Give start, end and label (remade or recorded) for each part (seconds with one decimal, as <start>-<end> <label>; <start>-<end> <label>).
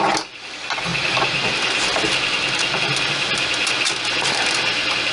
0.0-5.1 recorded